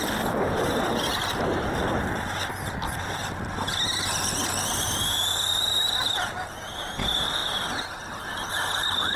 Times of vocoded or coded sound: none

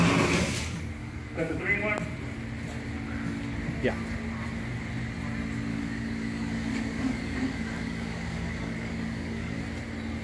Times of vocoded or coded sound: 1.0-1.6 (codec, DAC); 5.7-9.6

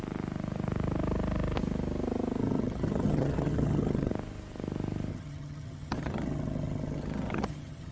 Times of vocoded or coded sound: 2.4-4.1 (vocoder, HiFi-GAN); 5.1-7.9

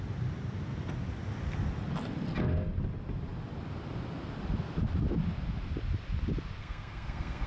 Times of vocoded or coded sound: 6.6-7.5 (codec, SNAC)

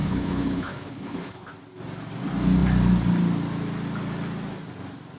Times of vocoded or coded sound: 0.0-1.5 (codec, HILCodec)

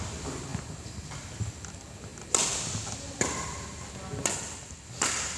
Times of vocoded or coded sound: none

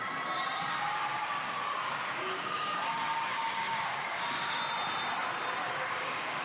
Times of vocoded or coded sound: 0.8-4.6 (codec, DAC); 5.6-6.4